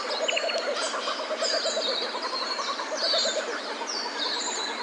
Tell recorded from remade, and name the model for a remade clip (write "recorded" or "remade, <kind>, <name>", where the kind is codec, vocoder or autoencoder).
recorded